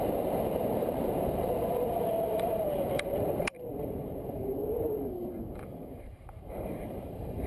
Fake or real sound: fake